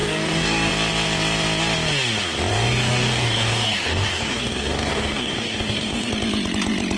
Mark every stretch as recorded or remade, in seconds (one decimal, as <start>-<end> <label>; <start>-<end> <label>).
0.0-0.7 remade; 0.7-2.5 recorded; 2.5-6.1 remade; 6.1-7.0 recorded